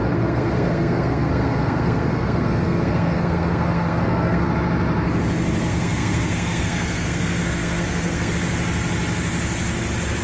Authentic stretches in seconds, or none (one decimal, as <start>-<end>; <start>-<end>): 4.5-5.7; 8.3-10.2